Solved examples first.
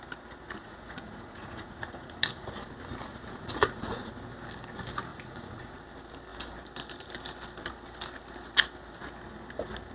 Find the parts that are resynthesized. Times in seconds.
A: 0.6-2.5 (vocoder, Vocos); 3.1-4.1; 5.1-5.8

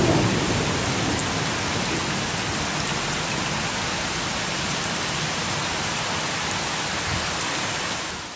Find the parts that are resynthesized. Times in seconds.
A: none